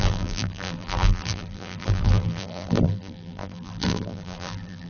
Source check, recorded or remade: remade